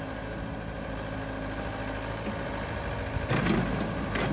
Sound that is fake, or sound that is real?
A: real